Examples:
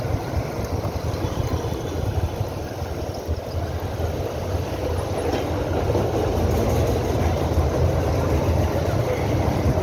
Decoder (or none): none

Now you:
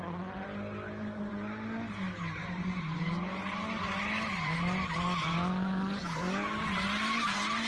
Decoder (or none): none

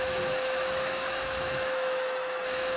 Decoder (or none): autoencoder, DAC-VAE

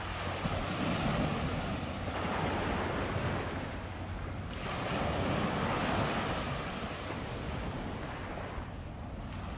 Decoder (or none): none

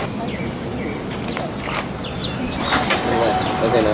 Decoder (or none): none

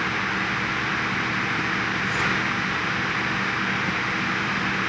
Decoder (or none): none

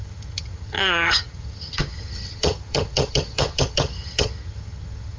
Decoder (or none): vocoder, HiFi-GAN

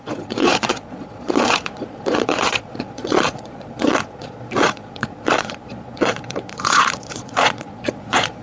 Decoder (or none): vocoder, Vocos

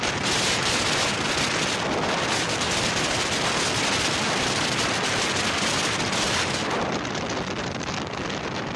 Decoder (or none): none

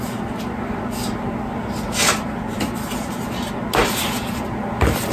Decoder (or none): none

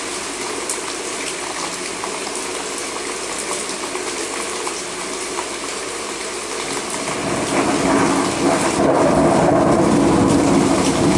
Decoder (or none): none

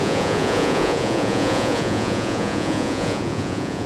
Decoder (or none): vocoder, Vocos